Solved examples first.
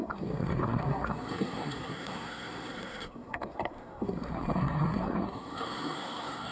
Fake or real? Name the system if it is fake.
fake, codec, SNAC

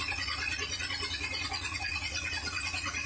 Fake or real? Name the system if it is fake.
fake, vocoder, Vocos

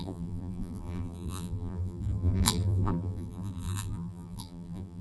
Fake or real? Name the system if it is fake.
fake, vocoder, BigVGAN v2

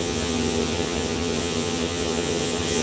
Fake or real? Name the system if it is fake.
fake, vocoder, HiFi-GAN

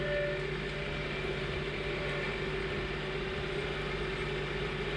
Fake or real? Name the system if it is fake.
real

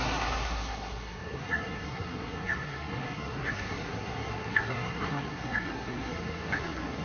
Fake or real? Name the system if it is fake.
fake, codec, SNAC